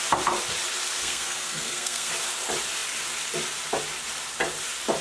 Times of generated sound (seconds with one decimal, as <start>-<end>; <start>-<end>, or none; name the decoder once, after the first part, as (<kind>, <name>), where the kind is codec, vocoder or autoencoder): 1.0-2.1 (codec, SNAC)